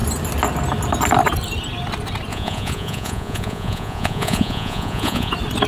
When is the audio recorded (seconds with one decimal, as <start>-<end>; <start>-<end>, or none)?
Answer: 0.0-2.3; 5.3-5.7